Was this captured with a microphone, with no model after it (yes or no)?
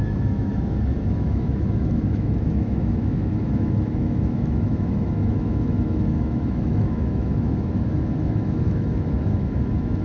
no